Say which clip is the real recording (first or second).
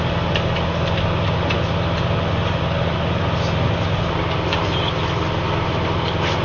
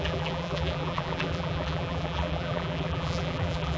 first